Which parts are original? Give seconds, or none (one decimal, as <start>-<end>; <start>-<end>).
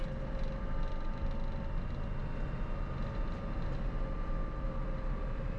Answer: 0.0-5.6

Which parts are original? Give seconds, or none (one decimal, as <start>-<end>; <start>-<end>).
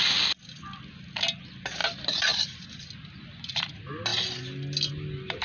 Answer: 0.0-5.4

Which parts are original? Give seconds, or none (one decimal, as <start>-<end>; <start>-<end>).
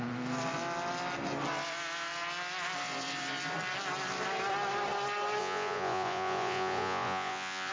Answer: 0.0-5.4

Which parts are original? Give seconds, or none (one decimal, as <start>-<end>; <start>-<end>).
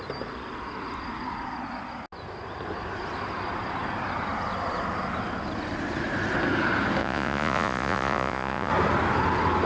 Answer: 0.0-7.0; 8.7-9.7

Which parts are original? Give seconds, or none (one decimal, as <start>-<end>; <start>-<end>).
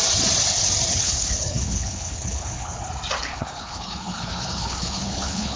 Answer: 0.0-0.9; 2.8-3.3